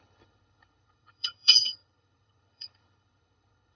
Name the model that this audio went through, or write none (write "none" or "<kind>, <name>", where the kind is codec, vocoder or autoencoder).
codec, HILCodec